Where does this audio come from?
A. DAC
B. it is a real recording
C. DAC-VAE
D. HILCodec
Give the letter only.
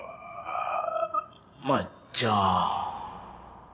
B